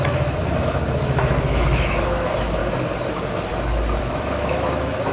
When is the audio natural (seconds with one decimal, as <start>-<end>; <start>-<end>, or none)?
2.6-3.1; 3.5-4.0